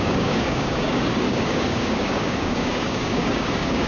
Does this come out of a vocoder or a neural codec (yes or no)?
yes